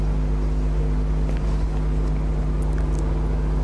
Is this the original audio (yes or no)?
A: yes